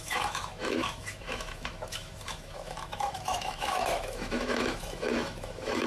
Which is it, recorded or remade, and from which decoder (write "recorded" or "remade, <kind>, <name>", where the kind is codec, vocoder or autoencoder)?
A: remade, autoencoder, DAC-VAE